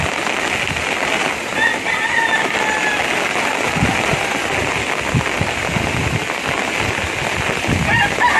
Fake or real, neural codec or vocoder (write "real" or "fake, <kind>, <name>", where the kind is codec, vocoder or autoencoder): real